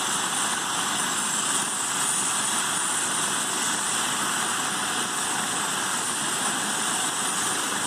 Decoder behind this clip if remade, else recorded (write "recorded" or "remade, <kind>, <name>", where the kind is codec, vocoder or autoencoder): recorded